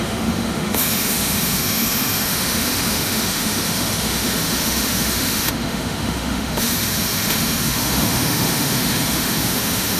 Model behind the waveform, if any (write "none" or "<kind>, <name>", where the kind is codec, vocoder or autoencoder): autoencoder, DAC-VAE